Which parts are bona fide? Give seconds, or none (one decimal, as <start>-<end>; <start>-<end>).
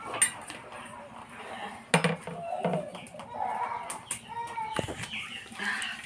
0.0-6.1